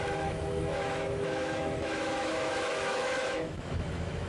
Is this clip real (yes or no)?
no